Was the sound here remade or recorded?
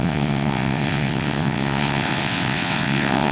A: remade